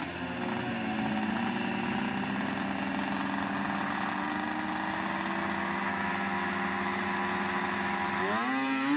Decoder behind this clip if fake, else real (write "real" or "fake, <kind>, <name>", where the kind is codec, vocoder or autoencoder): real